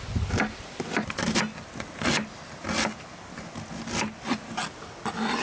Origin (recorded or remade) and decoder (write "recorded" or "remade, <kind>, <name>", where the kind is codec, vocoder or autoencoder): recorded